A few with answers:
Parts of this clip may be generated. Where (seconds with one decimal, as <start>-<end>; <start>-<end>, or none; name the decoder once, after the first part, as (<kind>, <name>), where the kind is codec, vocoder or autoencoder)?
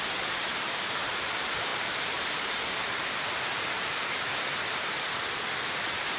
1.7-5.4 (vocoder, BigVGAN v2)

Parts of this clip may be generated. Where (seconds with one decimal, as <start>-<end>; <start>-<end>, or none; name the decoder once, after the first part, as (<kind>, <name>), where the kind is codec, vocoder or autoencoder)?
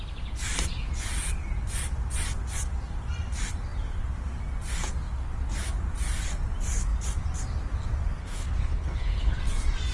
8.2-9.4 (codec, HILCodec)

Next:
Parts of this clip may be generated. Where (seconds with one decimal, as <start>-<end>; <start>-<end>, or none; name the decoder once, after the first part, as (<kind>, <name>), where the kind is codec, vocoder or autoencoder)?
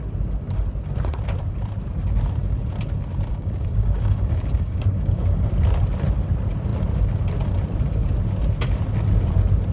3.3-5.5 (codec, DAC)